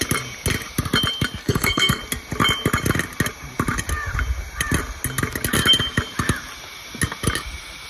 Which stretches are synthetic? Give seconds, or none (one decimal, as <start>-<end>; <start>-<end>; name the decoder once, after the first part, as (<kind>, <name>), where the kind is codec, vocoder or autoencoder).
1.4-2.0 (codec, SNAC)